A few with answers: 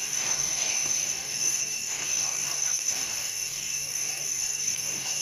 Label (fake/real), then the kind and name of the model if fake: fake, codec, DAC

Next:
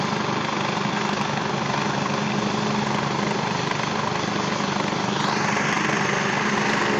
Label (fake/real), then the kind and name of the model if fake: real